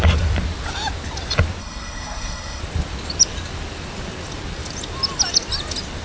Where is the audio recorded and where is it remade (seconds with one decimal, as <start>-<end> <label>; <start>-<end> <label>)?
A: 0.0-1.6 recorded; 1.6-2.6 remade; 2.6-6.0 recorded